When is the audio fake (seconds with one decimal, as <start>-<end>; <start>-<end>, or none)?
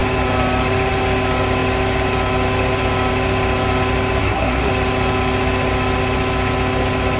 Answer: 4.2-4.7